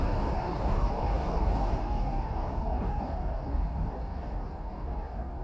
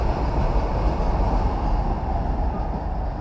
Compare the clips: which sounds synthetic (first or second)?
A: first